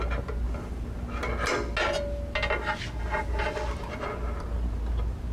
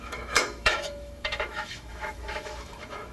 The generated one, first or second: second